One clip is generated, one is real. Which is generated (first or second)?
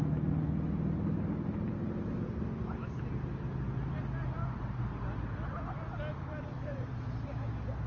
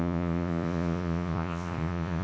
second